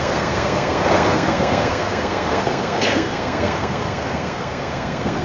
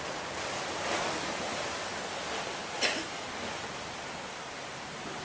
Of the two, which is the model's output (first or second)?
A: first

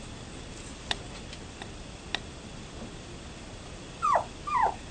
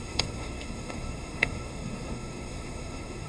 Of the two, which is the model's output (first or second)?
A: second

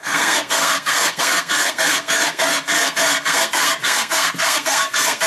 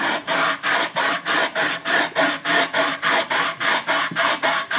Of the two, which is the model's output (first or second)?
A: first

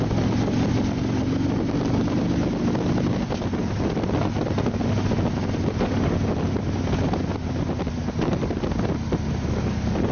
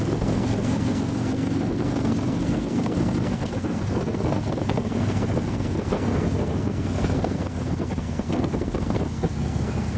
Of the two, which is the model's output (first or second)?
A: second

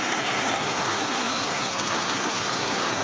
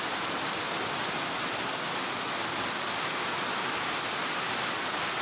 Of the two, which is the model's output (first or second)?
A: first